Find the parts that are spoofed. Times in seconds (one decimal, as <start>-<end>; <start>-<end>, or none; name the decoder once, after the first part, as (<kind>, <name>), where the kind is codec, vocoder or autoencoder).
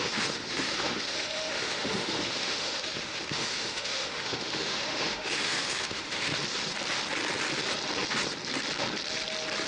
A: 0.0-6.3 (autoencoder, DAC-VAE)